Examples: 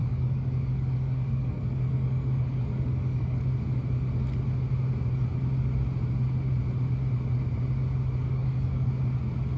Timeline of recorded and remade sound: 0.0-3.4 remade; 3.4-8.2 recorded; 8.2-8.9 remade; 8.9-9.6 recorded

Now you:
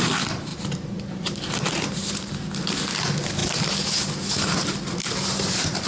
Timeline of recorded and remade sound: 0.0-0.5 recorded; 0.5-2.3 remade; 2.3-5.9 recorded

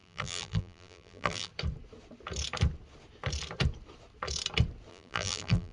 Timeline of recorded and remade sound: 0.0-1.5 remade; 1.5-4.9 recorded; 4.9-5.7 remade

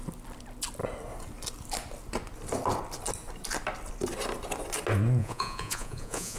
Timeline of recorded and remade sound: 0.0-5.2 recorded; 5.2-6.4 remade

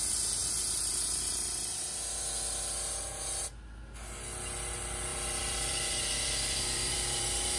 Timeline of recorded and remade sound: 0.0-5.1 recorded; 5.1-7.6 remade

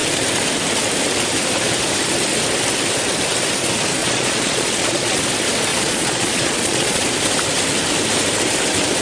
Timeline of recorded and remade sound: 0.0-4.0 recorded; 4.0-5.2 remade; 5.2-5.7 recorded; 5.7-7.0 remade; 7.0-9.0 recorded